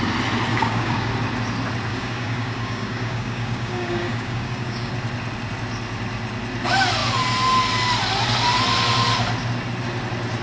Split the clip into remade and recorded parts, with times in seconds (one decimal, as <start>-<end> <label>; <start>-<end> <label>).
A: 0.0-0.5 recorded; 0.5-1.1 remade; 1.1-1.9 recorded; 1.9-4.9 remade; 4.9-10.4 recorded